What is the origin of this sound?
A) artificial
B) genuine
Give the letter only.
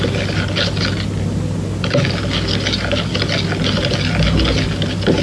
B